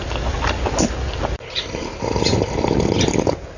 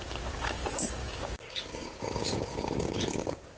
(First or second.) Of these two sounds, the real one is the first